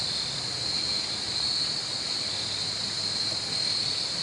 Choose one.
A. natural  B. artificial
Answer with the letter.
A